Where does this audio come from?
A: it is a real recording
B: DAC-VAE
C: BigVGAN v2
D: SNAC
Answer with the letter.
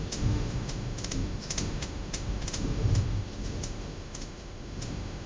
B